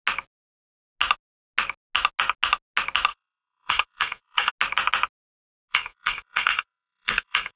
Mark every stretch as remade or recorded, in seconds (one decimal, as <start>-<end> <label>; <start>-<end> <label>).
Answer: 0.0-3.1 recorded; 3.1-4.5 remade; 4.5-5.7 recorded; 5.7-7.6 remade